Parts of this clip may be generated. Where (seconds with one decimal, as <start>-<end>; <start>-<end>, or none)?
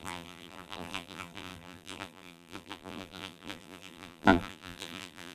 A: 0.0-5.3